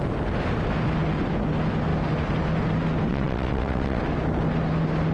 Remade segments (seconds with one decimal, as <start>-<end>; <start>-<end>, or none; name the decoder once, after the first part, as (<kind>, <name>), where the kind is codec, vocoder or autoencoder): 3.1-4.0 (vocoder, WaveNeXt)